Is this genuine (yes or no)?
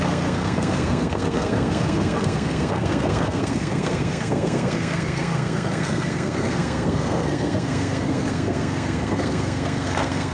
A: no